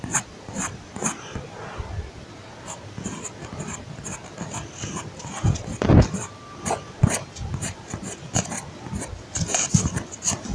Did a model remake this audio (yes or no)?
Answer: no